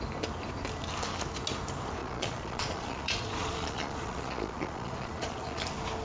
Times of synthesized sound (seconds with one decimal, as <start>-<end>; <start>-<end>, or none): 2.0-5.6